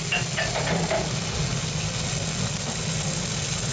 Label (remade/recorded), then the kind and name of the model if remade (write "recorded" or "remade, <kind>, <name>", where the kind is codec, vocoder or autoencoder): recorded